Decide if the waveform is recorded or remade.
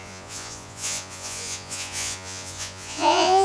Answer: remade